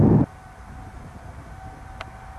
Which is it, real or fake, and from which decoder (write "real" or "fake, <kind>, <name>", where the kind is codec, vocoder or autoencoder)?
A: real